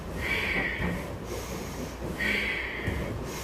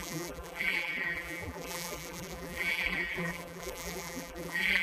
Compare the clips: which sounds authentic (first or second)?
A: first